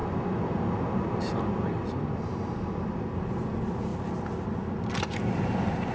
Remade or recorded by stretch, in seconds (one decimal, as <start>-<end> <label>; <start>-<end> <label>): 0.0-5.9 recorded